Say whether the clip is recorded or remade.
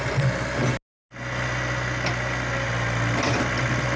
recorded